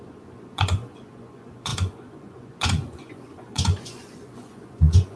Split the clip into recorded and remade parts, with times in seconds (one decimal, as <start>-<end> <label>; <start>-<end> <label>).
0.0-5.2 remade